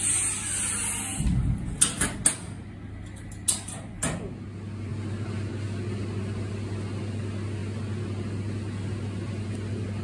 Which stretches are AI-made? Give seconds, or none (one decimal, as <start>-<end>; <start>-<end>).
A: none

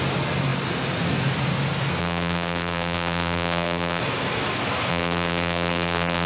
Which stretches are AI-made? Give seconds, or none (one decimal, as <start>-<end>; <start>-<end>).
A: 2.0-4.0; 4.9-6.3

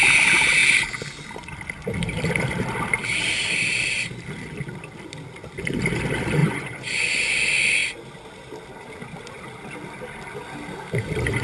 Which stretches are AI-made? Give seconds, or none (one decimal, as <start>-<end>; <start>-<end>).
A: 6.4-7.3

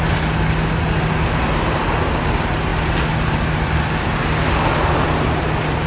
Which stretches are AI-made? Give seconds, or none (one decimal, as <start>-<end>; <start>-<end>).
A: none

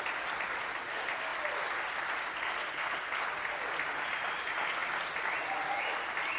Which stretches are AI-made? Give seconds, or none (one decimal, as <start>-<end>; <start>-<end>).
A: 2.7-3.3

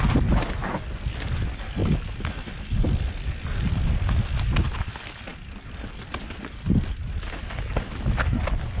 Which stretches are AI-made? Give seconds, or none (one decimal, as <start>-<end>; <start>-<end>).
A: none

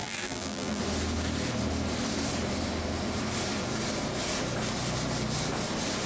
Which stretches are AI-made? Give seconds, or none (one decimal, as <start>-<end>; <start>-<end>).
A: 0.0-0.8